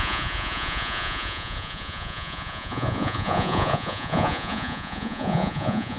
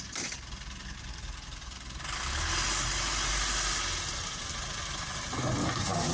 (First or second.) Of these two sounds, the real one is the second